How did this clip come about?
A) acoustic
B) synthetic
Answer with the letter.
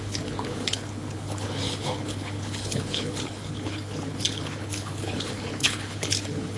B